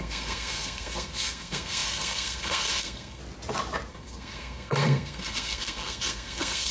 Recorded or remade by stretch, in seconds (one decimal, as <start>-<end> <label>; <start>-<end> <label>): 0.0-3.2 remade; 3.2-3.9 recorded; 3.9-6.7 remade